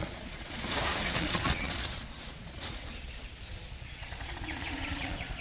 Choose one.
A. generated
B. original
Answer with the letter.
A